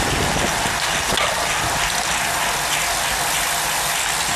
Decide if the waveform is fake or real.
real